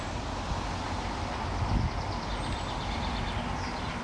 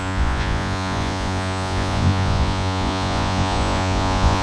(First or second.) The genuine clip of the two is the first